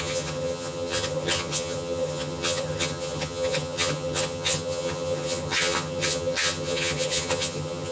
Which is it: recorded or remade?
remade